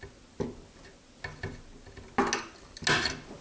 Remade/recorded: recorded